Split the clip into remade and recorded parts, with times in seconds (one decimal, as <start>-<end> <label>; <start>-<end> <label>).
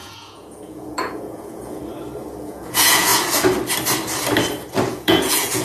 0.0-1.8 remade; 1.8-2.4 recorded; 2.4-3.1 remade; 3.1-4.9 recorded; 4.9-5.6 remade